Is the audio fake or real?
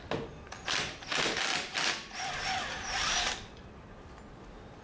real